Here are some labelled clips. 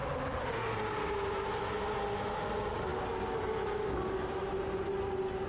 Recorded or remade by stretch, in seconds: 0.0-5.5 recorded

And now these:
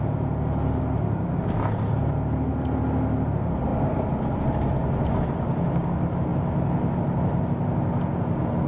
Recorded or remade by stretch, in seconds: 0.0-8.7 recorded

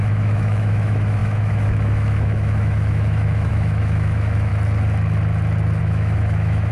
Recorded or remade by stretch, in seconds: 0.0-4.5 remade; 4.5-5.8 recorded; 5.8-6.7 remade

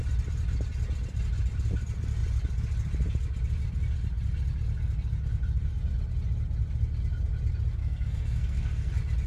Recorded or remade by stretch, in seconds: 0.0-7.8 recorded; 7.8-8.9 remade; 8.9-9.3 recorded